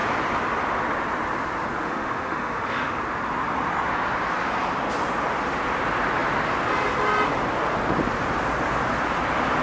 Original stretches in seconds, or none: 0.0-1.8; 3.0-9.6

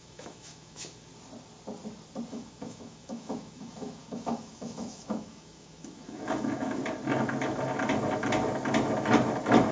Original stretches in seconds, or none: 1.1-2.3; 6.8-9.7

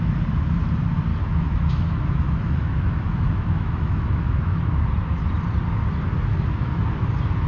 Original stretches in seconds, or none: 0.0-1.1; 4.6-6.3; 6.8-7.5

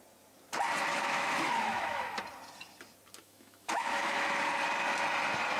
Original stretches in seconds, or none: 0.0-0.9; 2.2-3.2; 4.4-5.6